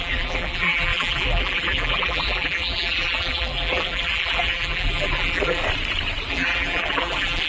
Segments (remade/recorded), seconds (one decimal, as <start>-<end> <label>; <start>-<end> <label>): 0.0-5.6 remade; 5.6-6.3 recorded; 6.3-7.5 remade